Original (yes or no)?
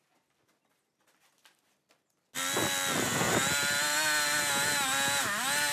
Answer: yes